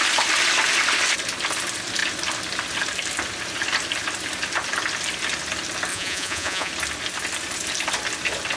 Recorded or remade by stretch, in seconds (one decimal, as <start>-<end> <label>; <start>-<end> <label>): 0.0-5.9 recorded; 5.9-6.7 remade; 6.7-8.6 recorded

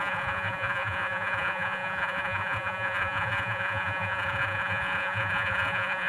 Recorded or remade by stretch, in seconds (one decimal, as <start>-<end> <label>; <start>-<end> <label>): 0.0-6.1 remade

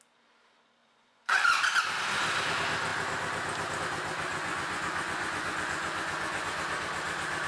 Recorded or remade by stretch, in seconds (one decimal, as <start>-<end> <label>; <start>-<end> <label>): 0.0-0.8 recorded; 0.8-1.6 remade; 1.6-4.3 recorded; 4.3-6.6 remade; 6.6-7.5 recorded

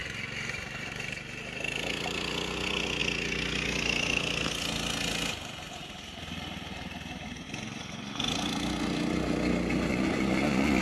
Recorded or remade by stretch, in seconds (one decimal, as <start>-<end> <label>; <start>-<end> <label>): 0.0-9.9 recorded; 9.9-10.8 remade